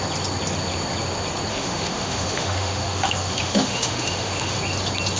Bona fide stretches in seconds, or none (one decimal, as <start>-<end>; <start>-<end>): 0.0-1.5; 4.6-5.2